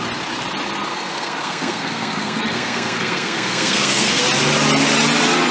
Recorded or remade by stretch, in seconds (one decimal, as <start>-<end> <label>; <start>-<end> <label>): 0.0-0.9 recorded; 0.9-4.2 remade; 4.2-5.5 recorded